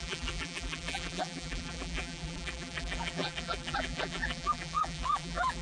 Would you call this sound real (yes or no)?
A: no